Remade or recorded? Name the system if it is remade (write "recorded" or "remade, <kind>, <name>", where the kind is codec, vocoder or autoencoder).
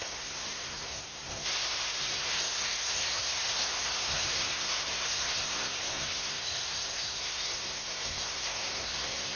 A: remade, codec, SNAC